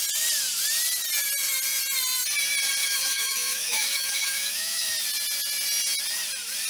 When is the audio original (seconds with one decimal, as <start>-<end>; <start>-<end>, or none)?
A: 0.0-2.8; 4.9-6.7